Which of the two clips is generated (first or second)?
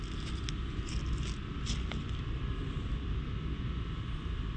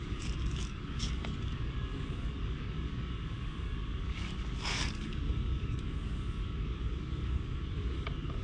second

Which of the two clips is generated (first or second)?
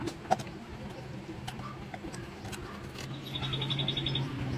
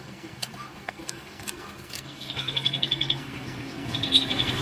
second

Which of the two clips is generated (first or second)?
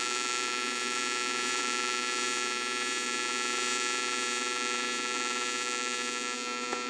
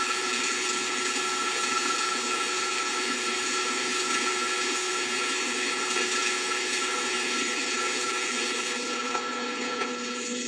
second